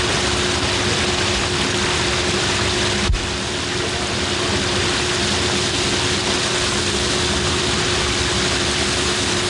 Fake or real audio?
real